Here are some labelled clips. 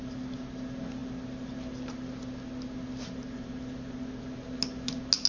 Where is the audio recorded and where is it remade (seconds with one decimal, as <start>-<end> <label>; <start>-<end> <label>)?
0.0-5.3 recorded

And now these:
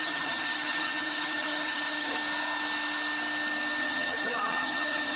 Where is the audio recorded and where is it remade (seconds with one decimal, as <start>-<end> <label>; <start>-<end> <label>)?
0.0-2.2 remade; 2.2-3.8 recorded; 3.8-5.2 remade

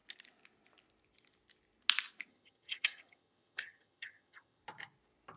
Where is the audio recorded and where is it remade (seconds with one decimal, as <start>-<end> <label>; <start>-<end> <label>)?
0.0-2.3 recorded; 2.3-4.6 remade; 4.6-5.4 recorded

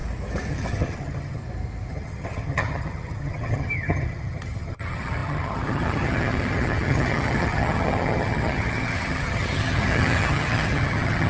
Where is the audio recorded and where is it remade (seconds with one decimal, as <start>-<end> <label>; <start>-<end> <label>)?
0.0-0.5 recorded; 0.5-1.4 remade; 1.4-1.9 recorded; 1.9-11.3 remade